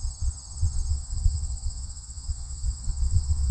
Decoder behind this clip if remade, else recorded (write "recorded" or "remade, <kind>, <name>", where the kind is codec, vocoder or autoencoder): remade, vocoder, Vocos